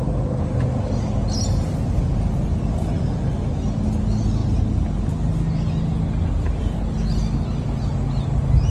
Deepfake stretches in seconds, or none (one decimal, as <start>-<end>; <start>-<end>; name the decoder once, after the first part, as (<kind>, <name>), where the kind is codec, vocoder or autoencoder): none